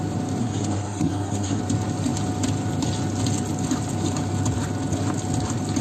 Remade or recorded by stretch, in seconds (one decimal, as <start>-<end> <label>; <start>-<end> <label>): 0.0-0.4 recorded; 0.4-1.6 remade; 1.6-5.8 recorded